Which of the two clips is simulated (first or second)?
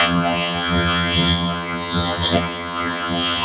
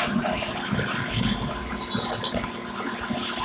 first